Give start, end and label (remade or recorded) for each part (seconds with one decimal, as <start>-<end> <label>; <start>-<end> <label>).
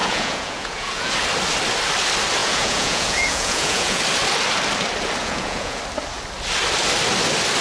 0.0-1.1 remade; 1.1-2.4 recorded; 2.4-4.0 remade; 4.0-5.2 recorded; 5.2-5.8 remade; 5.8-7.6 recorded